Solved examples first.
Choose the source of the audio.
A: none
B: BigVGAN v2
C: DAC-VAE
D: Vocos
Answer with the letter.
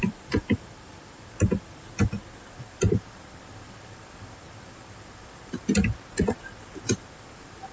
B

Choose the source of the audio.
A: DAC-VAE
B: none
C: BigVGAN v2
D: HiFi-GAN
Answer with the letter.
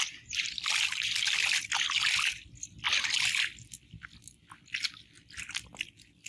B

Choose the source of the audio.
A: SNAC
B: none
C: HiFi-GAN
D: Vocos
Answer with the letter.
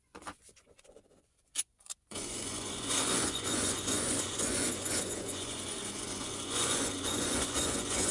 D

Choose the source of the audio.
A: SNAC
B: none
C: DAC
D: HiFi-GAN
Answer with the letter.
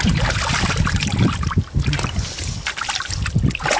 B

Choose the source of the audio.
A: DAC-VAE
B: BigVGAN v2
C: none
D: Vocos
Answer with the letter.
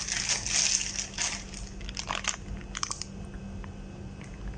C